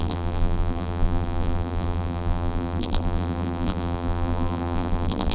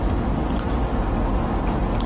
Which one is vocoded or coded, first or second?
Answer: first